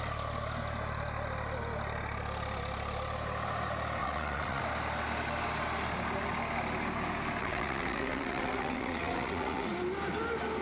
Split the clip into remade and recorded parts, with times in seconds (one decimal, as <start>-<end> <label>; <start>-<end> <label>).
0.0-4.0 recorded; 4.0-4.6 remade; 4.6-7.4 recorded; 7.4-9.7 remade; 9.7-10.6 recorded